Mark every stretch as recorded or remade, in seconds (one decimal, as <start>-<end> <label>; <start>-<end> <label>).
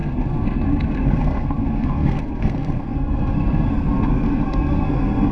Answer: 0.0-5.3 remade